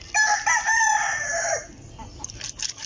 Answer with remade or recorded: recorded